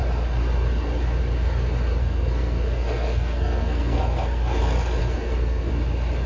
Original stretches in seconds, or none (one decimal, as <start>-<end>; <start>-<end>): 0.0-2.0; 4.6-5.0; 5.7-6.3